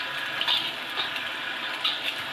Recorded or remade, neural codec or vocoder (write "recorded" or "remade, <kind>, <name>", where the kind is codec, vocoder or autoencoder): recorded